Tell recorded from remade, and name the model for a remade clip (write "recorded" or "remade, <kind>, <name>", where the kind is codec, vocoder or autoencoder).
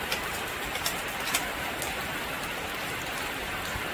recorded